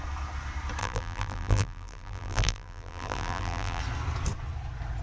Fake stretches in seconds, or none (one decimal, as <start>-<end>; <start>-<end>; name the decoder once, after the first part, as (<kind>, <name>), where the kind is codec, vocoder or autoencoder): 0.8-3.8 (vocoder, BigVGAN v2)